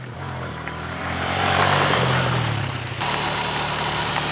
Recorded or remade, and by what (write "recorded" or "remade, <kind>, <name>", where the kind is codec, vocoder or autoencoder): remade, vocoder, BigVGAN v2